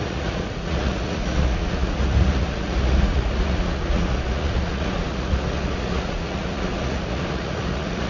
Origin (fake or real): fake